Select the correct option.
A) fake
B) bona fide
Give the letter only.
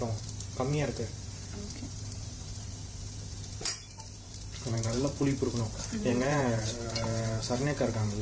A